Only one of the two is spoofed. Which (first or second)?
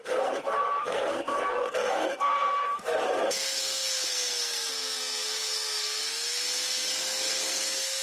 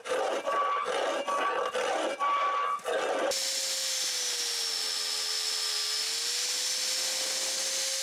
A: first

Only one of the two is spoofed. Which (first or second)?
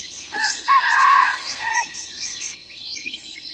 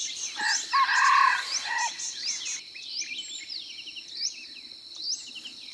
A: first